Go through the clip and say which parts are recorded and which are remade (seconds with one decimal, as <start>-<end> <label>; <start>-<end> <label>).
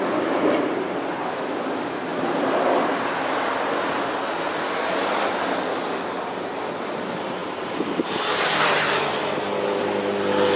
0.0-10.6 recorded